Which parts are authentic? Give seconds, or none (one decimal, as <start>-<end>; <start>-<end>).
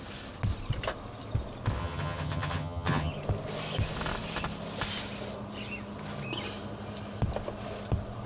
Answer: 0.0-1.8; 3.1-8.3